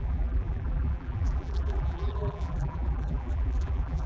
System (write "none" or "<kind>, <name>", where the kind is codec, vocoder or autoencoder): vocoder, BigVGAN v2